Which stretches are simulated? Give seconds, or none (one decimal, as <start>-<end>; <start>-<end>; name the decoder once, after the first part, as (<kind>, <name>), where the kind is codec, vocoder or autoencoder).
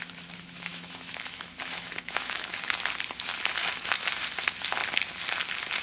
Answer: 0.7-2.5 (autoencoder, DAC-VAE); 3.6-4.1